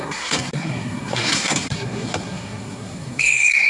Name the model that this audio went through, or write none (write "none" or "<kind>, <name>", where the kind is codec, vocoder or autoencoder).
codec, SNAC